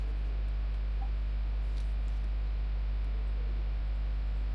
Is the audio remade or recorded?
remade